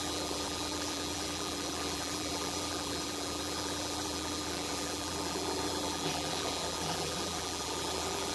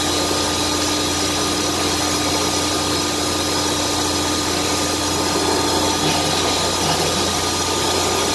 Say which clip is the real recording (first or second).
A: second